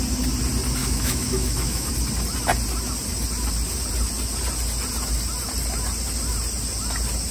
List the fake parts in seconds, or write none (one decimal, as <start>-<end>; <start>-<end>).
0.8-1.9